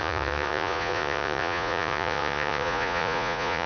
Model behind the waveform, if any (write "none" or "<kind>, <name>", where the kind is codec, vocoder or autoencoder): vocoder, Vocos